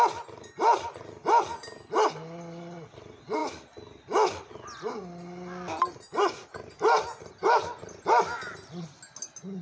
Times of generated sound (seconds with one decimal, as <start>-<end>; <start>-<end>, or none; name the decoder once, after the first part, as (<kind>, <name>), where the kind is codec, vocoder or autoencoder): none

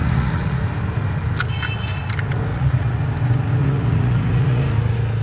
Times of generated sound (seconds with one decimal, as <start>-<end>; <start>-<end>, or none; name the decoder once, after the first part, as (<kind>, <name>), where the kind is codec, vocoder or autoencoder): 0.0-0.6 (vocoder, Vocos); 2.5-3.0; 3.6-4.6

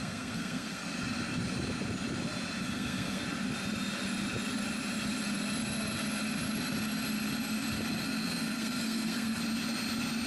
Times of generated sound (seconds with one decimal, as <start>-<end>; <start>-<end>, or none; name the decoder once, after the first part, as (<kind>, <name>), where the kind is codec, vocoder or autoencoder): 0.0-0.8 (codec, SNAC); 2.6-3.2; 8.0-9.4

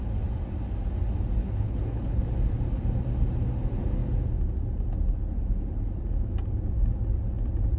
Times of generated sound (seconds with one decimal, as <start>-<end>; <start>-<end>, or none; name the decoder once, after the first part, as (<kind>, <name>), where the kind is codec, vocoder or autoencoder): 1.4-2.2 (codec, HILCodec)

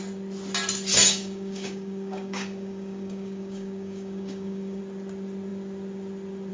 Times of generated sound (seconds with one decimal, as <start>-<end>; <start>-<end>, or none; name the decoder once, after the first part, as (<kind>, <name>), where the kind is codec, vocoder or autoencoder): 0.9-4.8 (codec, DAC)

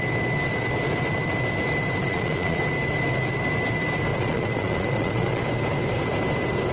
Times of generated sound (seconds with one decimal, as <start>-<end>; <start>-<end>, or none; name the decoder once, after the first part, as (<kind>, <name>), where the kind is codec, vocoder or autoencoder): 2.0-2.6 (vocoder, Vocos); 4.1-5.4

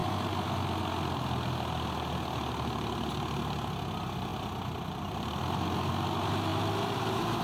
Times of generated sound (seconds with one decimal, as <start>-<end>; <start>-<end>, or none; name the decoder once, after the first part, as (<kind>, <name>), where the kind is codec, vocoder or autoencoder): none

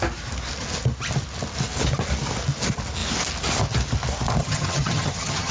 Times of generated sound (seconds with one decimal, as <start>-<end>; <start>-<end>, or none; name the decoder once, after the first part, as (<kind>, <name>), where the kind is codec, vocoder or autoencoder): 4.4-5.5 (vocoder, HiFi-GAN)